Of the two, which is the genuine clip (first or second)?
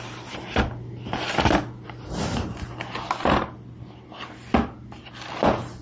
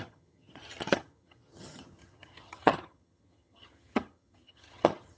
first